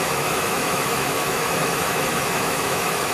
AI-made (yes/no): yes